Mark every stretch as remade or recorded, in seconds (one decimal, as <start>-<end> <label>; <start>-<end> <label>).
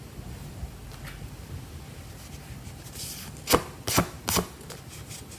0.0-5.4 recorded